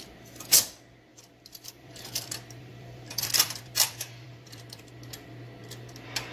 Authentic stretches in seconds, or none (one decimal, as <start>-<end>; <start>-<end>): 0.0-1.1; 4.9-6.3